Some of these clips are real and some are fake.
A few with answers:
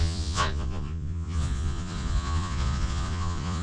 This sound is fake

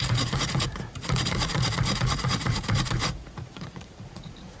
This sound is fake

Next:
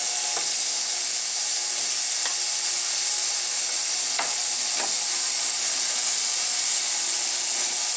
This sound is real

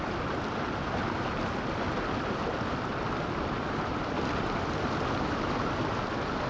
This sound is real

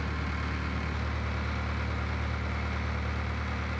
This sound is real